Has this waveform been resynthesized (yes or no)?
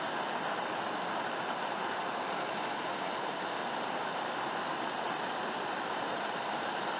yes